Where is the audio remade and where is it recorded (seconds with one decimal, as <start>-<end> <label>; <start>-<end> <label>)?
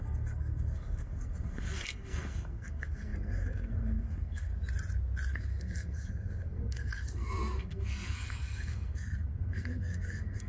0.0-4.5 remade; 4.5-5.3 recorded; 5.3-10.5 remade